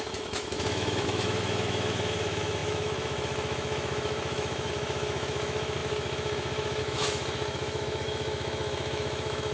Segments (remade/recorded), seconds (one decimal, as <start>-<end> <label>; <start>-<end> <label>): 0.0-9.5 remade